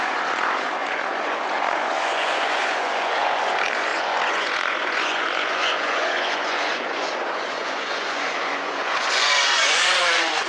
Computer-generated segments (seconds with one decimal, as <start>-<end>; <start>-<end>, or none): 0.0-10.5